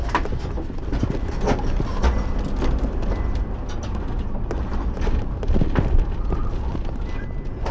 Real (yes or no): yes